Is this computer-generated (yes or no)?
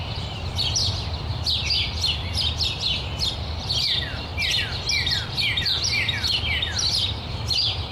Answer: no